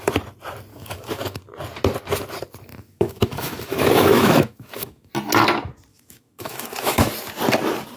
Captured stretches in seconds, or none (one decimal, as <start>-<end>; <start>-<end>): 0.0-0.7; 1.4-2.7; 5.1-5.9; 7.1-8.0